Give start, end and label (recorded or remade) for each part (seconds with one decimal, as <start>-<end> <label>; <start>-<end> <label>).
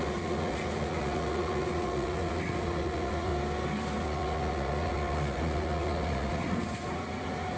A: 0.0-3.3 remade; 3.3-4.0 recorded; 4.0-7.6 remade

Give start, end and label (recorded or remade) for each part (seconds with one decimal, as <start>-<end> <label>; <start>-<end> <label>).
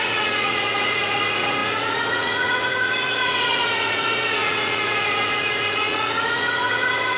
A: 0.0-7.2 remade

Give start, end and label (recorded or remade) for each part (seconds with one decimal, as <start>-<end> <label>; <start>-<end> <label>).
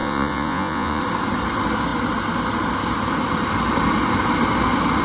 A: 0.0-1.0 remade; 1.0-5.0 recorded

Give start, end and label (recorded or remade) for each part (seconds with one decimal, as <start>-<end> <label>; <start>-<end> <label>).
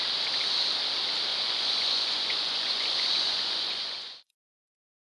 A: 0.0-1.3 recorded; 1.3-4.4 remade; 4.4-5.2 recorded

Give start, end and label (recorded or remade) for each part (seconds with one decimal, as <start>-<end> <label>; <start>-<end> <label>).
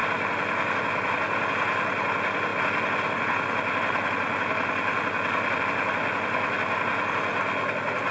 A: 0.0-8.1 recorded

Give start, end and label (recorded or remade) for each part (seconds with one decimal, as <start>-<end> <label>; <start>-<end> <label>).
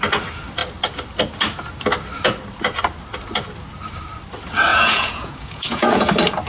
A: 0.0-4.7 recorded; 4.7-6.1 remade; 6.1-6.5 recorded